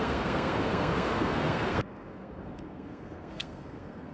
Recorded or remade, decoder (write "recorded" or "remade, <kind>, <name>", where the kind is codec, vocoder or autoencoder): remade, codec, SNAC